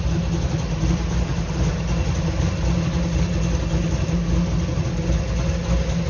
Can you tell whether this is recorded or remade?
recorded